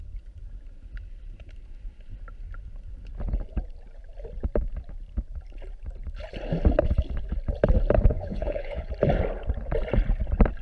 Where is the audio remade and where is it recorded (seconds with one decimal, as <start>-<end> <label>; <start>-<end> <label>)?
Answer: 0.0-8.1 recorded; 8.1-8.9 remade; 8.9-10.6 recorded